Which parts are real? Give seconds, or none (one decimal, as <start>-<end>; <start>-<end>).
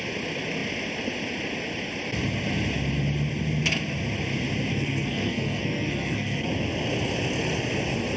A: 0.0-4.7; 6.5-8.2